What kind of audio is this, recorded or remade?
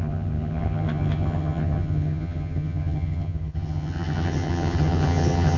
remade